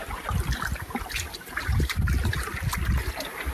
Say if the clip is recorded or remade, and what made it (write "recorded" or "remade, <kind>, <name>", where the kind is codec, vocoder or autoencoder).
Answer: recorded